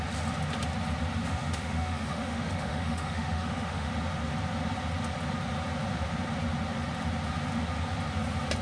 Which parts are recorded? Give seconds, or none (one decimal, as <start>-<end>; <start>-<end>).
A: 0.0-1.2; 3.9-8.6